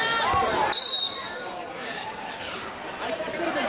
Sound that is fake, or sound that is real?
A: fake